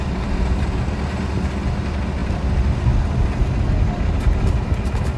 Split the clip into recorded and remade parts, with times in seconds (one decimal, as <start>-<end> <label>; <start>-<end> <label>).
0.0-5.2 recorded